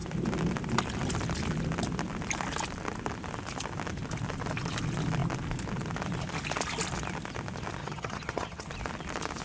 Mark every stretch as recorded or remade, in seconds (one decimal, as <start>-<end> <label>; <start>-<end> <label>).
0.0-7.8 recorded; 7.8-8.7 remade; 8.7-9.4 recorded